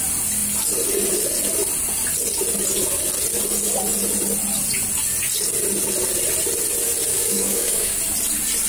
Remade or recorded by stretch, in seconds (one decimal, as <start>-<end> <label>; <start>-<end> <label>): 0.0-7.1 recorded; 7.1-8.0 remade; 8.0-8.7 recorded